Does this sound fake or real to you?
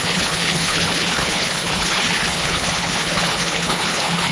fake